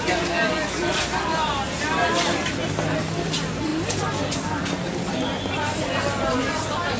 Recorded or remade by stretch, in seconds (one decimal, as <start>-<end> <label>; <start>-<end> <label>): 0.0-7.0 recorded